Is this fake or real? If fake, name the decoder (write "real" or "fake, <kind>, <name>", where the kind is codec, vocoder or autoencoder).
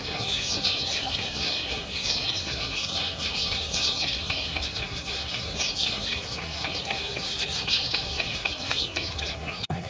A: fake, codec, SNAC